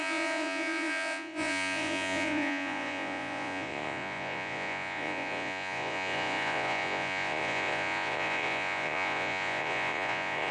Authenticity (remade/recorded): remade